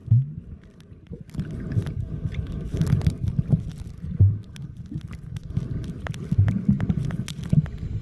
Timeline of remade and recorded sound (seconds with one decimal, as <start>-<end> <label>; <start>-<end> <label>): 0.0-8.0 recorded